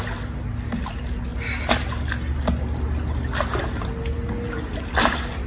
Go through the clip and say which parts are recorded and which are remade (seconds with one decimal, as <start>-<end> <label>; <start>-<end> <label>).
0.0-5.5 recorded